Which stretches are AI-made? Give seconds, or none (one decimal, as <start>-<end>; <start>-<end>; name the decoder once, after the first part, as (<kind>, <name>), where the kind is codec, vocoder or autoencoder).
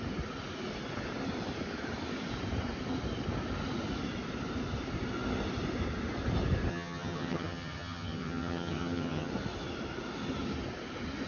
6.7-9.3 (vocoder, HiFi-GAN)